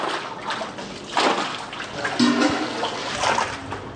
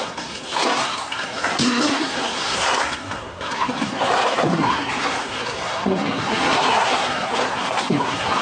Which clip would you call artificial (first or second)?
second